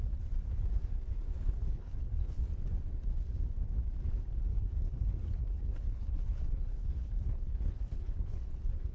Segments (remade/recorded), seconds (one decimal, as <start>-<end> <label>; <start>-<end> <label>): 0.0-1.7 recorded; 1.7-2.4 remade; 2.4-4.5 recorded; 4.5-8.5 remade; 8.5-8.9 recorded